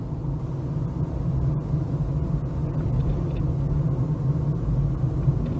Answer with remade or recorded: recorded